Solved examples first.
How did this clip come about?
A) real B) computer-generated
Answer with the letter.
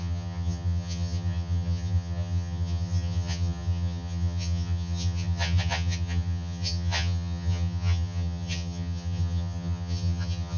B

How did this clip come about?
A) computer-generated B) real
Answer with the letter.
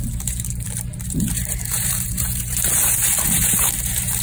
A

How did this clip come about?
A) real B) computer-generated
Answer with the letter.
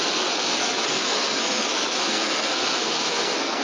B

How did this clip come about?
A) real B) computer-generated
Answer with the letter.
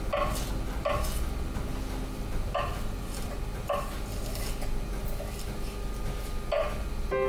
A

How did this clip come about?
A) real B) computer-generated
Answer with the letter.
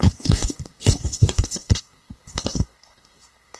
B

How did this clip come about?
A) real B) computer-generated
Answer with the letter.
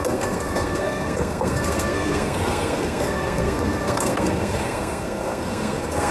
B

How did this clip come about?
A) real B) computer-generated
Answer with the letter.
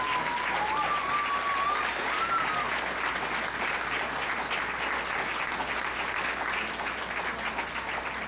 A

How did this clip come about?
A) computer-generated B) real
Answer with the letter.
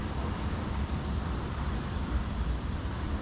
A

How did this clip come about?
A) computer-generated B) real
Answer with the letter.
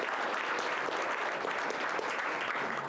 B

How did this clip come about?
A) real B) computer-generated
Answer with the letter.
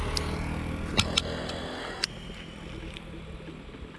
A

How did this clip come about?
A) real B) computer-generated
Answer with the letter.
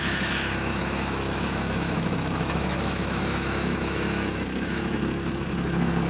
B